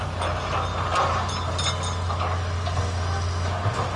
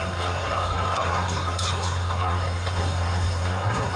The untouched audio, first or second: first